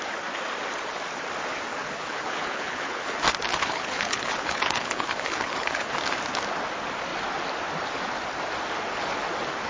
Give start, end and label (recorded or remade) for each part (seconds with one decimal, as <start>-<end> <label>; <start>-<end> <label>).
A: 0.0-1.7 recorded; 1.7-3.0 remade; 3.0-3.5 recorded; 3.5-5.9 remade; 5.9-9.7 recorded